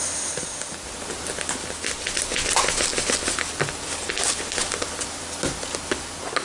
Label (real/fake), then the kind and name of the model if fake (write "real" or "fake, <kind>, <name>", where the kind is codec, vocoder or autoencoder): real